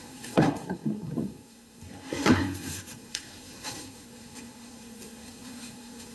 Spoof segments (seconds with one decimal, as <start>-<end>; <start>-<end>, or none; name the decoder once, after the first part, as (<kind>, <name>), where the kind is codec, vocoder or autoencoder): 0.0-6.1 (codec, SNAC)